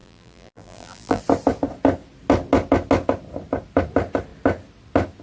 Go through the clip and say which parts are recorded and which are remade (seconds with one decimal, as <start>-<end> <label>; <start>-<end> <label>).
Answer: 0.0-1.2 remade; 1.2-5.2 recorded